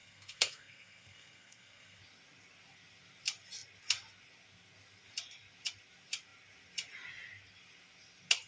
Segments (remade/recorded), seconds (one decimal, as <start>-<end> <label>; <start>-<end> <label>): 0.0-2.0 remade; 2.0-8.5 recorded